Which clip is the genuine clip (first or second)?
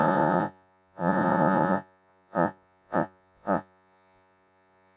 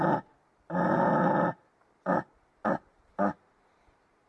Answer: second